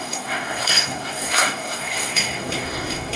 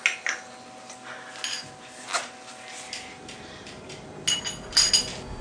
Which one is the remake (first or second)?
first